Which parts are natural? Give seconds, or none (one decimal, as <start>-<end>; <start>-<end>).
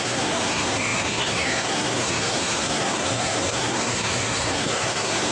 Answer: none